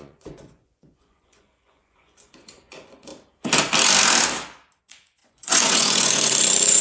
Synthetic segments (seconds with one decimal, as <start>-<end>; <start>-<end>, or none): 0.0-3.1; 4.8-6.8